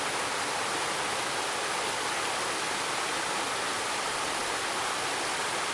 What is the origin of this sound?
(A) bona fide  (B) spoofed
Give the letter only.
A